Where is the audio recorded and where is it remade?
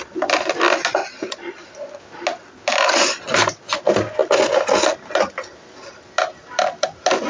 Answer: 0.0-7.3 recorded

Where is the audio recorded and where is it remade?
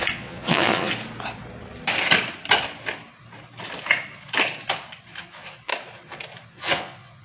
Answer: 0.0-0.9 remade; 0.9-5.2 recorded; 5.2-5.7 remade; 5.7-6.5 recorded; 6.5-7.2 remade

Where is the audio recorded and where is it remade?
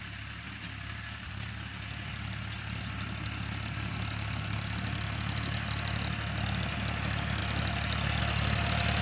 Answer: 0.0-9.0 recorded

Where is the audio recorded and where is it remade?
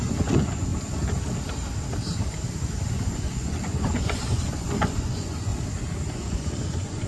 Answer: 0.0-0.7 remade; 0.7-2.9 recorded; 2.9-5.5 remade; 5.5-6.1 recorded; 6.1-7.1 remade